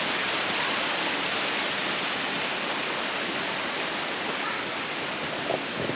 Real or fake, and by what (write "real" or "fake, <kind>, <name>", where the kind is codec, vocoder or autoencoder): real